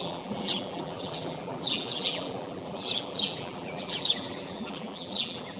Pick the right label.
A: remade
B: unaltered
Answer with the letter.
A